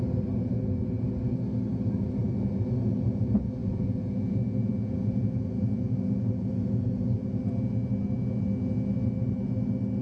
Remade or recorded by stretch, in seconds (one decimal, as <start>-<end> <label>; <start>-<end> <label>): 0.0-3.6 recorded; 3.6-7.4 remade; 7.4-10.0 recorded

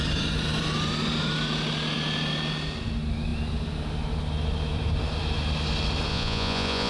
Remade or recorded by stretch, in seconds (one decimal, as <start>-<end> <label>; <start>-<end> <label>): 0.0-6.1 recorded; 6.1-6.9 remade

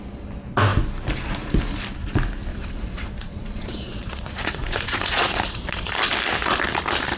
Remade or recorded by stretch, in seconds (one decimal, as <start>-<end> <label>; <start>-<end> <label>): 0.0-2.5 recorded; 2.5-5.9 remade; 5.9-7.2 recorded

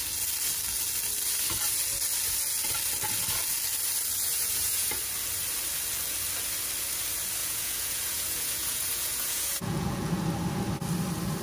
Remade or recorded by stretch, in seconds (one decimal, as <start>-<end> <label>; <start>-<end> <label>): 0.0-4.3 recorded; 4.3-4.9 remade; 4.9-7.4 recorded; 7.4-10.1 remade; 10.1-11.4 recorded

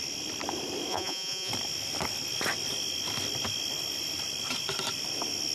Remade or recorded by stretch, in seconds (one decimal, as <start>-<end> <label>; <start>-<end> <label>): 0.0-0.9 recorded; 0.9-1.5 remade; 1.5-5.5 recorded